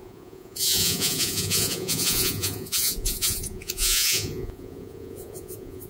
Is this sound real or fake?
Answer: fake